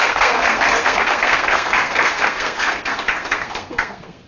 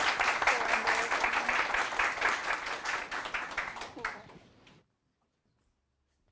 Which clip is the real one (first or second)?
second